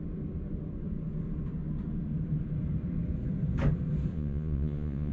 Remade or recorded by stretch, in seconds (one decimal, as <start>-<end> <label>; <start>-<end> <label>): 0.0-4.1 recorded; 4.1-5.1 remade